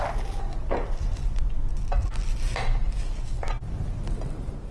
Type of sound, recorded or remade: recorded